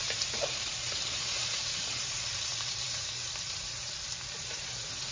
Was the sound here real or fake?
fake